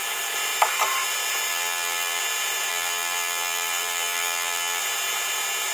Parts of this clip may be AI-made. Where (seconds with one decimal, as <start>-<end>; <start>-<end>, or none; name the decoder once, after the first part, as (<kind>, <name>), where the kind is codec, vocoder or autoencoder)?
1.5-2.2 (vocoder, BigVGAN v2); 2.7-4.8